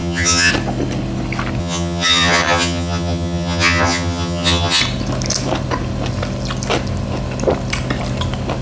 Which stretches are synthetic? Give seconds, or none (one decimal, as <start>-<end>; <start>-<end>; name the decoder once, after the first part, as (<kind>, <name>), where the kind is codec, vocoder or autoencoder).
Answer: 0.0-0.5 (vocoder, HiFi-GAN); 1.6-4.8